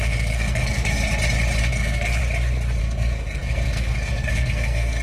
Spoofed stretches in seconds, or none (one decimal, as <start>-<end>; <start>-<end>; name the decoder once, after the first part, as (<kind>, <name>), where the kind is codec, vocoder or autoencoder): 0.0-1.0 (codec, SNAC); 1.6-2.2; 2.8-5.0